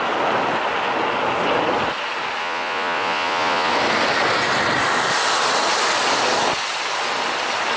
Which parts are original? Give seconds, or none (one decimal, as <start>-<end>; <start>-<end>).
0.0-2.4; 3.7-7.8